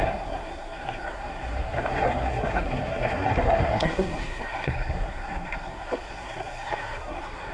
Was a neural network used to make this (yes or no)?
yes